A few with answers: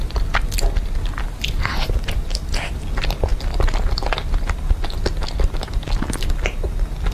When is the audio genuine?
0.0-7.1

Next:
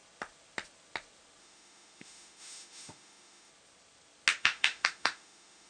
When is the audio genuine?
0.0-1.4; 3.5-4.4

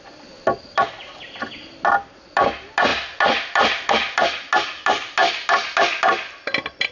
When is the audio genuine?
0.0-6.9

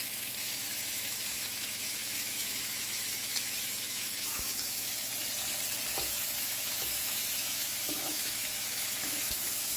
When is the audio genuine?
5.1-6.0

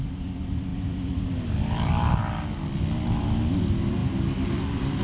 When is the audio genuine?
0.0-5.0

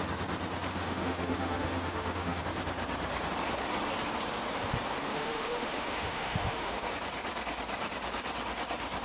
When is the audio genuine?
0.0-0.7; 2.4-5.1; 6.9-9.0

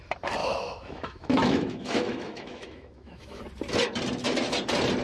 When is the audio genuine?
0.0-0.4; 3.4-5.0

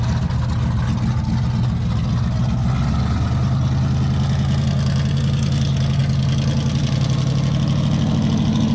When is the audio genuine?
0.0-8.7